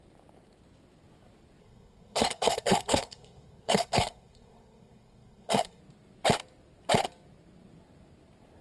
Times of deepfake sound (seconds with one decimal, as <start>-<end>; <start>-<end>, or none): 1.6-5.8